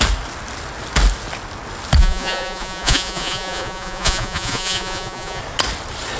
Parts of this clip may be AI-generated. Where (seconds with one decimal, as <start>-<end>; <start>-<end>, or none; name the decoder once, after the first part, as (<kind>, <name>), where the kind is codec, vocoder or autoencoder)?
2.0-5.4 (vocoder, Vocos)